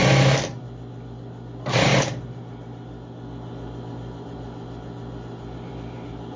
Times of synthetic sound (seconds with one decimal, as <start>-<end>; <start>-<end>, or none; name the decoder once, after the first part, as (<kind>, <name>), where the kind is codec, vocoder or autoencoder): none